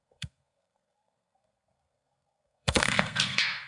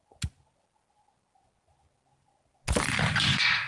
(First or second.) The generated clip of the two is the first